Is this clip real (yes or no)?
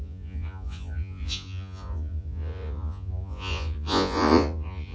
no